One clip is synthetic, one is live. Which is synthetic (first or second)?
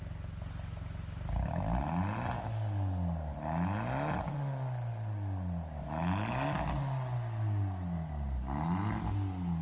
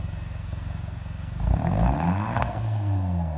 second